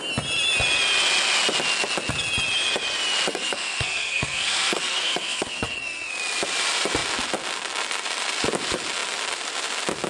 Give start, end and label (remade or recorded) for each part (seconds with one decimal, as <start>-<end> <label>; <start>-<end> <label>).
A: 0.0-3.3 recorded; 3.3-6.1 remade; 6.1-10.1 recorded